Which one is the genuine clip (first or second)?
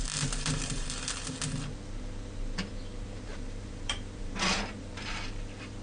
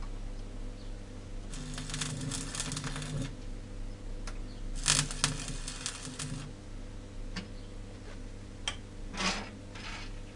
second